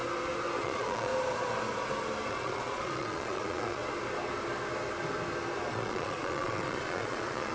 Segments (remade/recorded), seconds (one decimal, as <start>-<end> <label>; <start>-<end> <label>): 0.0-0.6 recorded; 0.6-1.1 remade; 1.1-2.3 recorded; 2.3-3.8 remade; 3.8-5.7 recorded; 5.7-7.5 remade